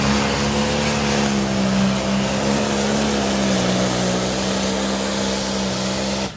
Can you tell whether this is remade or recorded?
recorded